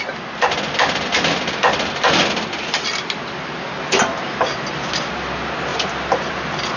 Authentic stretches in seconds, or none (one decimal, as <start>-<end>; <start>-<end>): 0.0-6.8